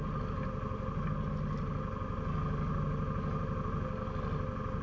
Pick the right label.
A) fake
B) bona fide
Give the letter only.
B